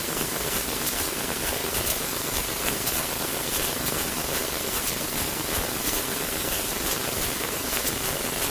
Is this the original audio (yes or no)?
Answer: no